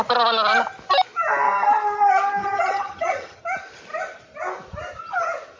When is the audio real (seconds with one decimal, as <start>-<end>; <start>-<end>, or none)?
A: 0.0-2.4; 3.4-5.6